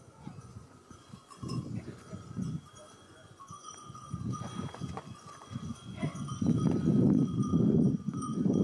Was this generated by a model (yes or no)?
yes